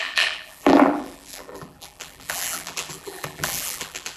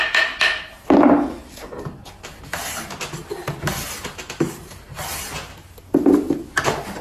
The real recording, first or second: second